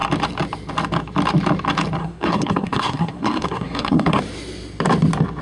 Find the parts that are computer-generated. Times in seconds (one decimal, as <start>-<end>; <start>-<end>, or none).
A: 2.0-4.2